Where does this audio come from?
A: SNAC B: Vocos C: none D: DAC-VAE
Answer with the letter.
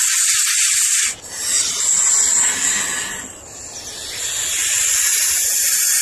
C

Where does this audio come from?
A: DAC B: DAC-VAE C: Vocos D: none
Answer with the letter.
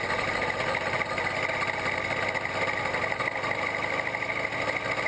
D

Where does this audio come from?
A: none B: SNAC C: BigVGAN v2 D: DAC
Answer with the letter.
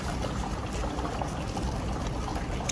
A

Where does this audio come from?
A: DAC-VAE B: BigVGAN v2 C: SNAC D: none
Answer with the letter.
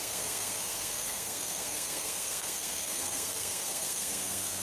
C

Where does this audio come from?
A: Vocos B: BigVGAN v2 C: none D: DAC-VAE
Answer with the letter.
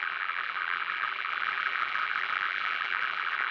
B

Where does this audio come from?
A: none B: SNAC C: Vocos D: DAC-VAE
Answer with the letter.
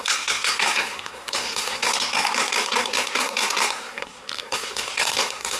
B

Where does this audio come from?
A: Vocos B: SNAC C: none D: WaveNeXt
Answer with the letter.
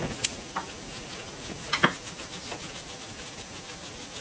C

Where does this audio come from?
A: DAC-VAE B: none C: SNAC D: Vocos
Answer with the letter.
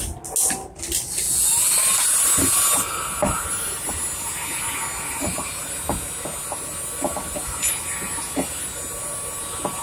B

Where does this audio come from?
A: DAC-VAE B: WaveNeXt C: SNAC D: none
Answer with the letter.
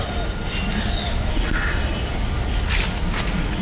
D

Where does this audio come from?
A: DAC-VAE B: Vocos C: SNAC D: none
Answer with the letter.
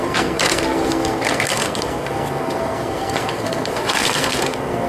C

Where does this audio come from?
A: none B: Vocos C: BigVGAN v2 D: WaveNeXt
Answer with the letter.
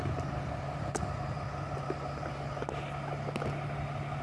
A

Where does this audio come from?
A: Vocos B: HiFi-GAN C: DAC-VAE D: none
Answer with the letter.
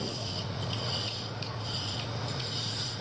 A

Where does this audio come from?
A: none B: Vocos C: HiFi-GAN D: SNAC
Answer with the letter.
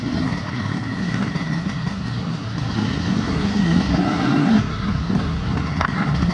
D